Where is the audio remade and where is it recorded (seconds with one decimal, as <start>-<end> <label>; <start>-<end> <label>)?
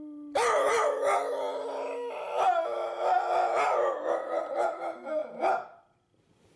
0.0-6.6 recorded